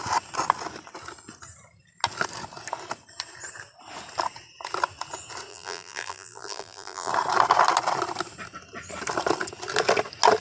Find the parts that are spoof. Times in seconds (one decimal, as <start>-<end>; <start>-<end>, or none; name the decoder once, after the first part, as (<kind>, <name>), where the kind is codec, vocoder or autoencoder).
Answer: 5.5-7.1 (vocoder, BigVGAN v2)